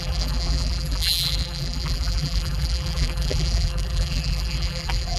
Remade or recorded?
remade